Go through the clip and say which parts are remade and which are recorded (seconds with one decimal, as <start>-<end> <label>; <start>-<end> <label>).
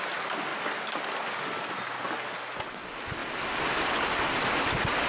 0.0-5.1 recorded